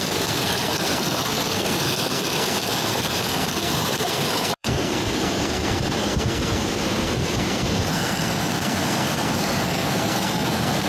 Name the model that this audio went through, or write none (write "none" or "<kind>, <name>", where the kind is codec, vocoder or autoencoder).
codec, SNAC